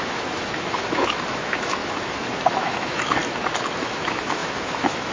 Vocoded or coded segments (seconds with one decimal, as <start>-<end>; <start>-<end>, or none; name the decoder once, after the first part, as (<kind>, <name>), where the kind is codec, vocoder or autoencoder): 0.0-3.2 (autoencoder, DAC-VAE); 3.8-5.1